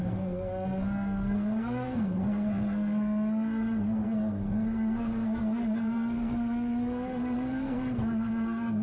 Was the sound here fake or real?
fake